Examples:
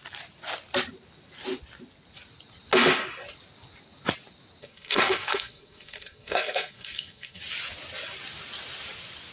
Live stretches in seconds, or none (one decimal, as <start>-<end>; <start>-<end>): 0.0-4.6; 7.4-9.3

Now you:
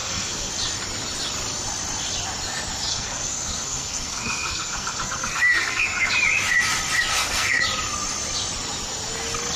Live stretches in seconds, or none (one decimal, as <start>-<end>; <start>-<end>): 0.5-2.9; 6.1-7.1; 7.6-9.6

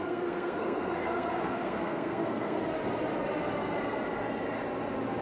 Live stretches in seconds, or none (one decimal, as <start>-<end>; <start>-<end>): 2.6-5.2

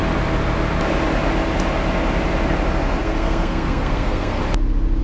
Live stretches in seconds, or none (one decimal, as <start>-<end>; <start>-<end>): 0.0-3.0; 4.4-5.0